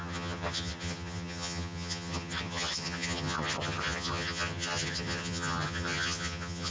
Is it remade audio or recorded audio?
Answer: remade